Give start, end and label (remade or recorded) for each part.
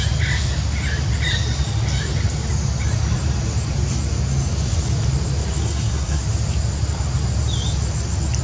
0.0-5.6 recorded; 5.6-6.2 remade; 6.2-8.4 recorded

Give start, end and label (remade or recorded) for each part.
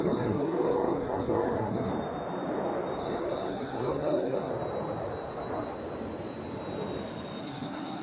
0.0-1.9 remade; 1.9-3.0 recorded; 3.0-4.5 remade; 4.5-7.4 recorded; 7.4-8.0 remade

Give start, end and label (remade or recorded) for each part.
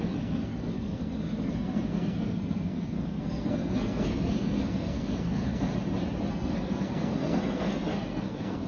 0.0-5.7 remade; 5.7-6.3 recorded; 6.3-8.7 remade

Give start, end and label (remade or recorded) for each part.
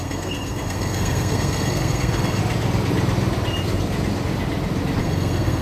0.0-2.4 remade; 2.4-5.0 recorded; 5.0-5.6 remade